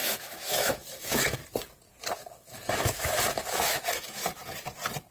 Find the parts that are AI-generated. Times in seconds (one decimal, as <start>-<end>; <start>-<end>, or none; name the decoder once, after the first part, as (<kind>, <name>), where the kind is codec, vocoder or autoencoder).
0.0-1.4 (autoencoder, DAC-VAE); 2.1-4.2